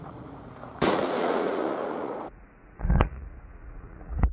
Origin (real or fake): fake